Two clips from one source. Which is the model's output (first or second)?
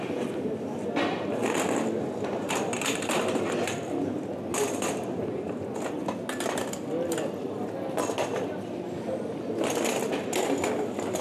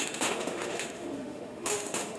second